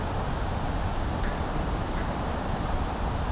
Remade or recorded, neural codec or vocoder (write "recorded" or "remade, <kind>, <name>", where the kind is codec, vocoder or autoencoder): remade, vocoder, BigVGAN v2